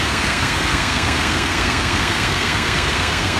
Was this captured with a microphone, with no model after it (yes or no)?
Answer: no